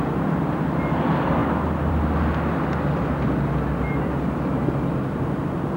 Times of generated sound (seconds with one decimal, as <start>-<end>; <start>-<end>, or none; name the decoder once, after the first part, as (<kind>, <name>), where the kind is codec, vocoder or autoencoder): none